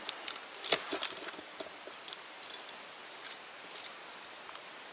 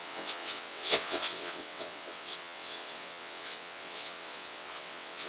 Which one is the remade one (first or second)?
second